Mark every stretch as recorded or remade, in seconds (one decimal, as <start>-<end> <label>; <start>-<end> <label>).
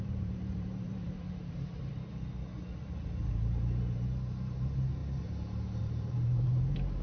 0.0-2.1 remade; 2.1-3.3 recorded; 3.3-5.0 remade; 5.0-5.8 recorded; 5.8-7.0 remade